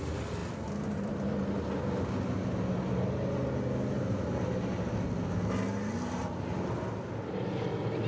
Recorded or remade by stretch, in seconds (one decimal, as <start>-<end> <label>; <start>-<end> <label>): 0.0-8.1 recorded

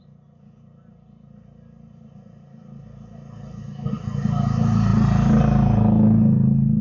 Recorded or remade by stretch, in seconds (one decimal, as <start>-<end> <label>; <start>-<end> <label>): 0.0-6.8 recorded

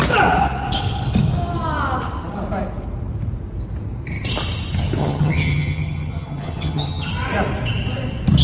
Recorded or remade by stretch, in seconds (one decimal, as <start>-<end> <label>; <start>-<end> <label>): 0.0-5.0 recorded; 5.0-7.1 remade; 7.1-8.4 recorded